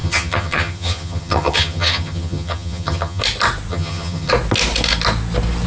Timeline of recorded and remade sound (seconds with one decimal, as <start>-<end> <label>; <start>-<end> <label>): 0.0-3.2 remade; 3.2-3.7 recorded; 3.7-4.3 remade; 4.3-5.7 recorded